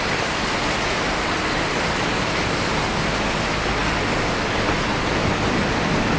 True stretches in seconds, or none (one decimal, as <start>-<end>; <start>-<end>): 0.0-6.2